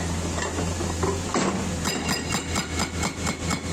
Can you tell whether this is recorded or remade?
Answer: recorded